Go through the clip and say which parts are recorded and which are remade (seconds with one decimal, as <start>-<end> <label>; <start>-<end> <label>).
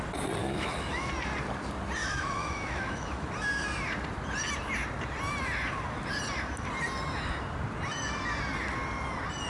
0.0-0.4 recorded; 0.4-1.1 remade; 1.1-2.0 recorded; 2.0-3.3 remade; 3.3-9.5 recorded